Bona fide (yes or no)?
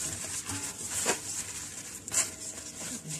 yes